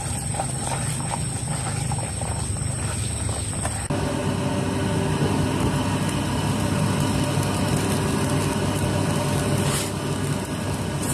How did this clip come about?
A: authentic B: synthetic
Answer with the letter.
A